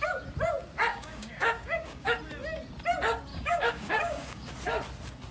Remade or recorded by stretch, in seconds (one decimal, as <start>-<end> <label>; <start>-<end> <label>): 0.0-0.9 recorded; 0.9-2.2 remade; 2.2-3.3 recorded; 3.3-4.5 remade; 4.5-5.3 recorded